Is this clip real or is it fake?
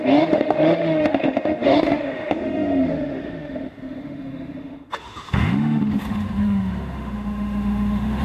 fake